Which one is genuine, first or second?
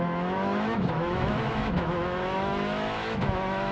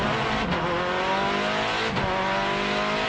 second